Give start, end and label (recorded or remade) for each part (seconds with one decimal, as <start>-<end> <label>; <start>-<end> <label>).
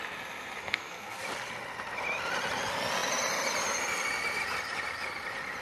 0.0-0.6 recorded; 0.6-1.2 remade; 1.2-5.6 recorded